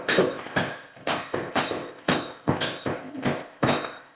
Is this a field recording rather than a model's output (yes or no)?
no